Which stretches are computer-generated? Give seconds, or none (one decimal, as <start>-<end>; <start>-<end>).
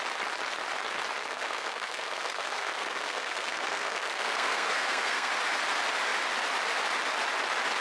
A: 1.2-5.3